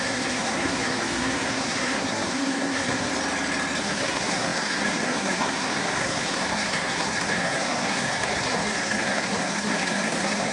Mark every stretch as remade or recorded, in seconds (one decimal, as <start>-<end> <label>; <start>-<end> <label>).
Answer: 0.0-3.1 remade; 3.1-3.8 recorded; 3.8-10.5 remade